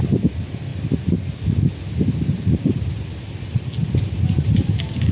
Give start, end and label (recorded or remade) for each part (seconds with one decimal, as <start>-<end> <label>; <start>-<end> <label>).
0.0-5.1 recorded